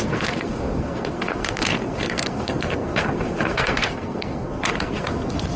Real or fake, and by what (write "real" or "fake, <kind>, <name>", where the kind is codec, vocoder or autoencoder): fake, codec, SNAC